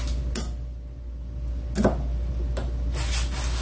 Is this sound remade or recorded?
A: recorded